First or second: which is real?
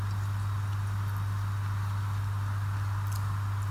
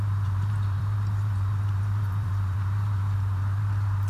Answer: first